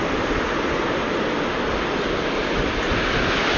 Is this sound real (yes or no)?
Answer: yes